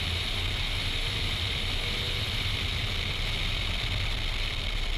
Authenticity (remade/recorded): recorded